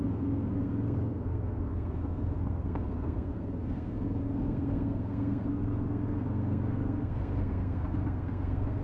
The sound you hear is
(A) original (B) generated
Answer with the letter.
B